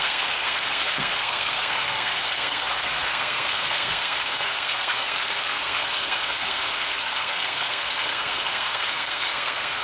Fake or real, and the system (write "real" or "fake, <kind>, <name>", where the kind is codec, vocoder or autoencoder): fake, codec, SNAC